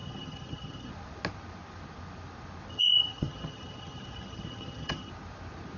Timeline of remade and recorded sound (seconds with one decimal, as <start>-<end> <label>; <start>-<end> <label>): 0.0-0.9 remade; 0.9-2.7 recorded; 2.7-5.1 remade; 5.1-5.8 recorded